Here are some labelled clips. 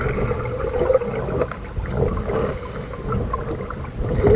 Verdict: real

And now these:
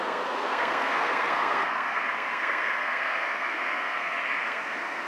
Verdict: fake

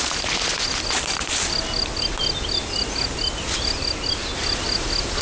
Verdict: real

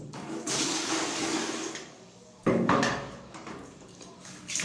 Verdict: fake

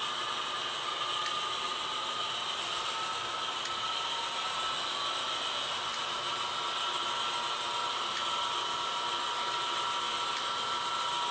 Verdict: real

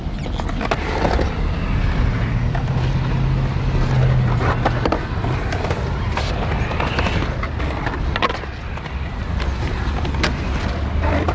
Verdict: real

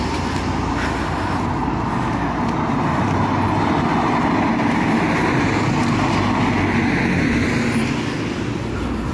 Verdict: real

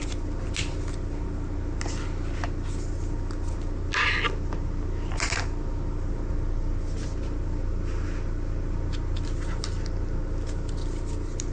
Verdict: real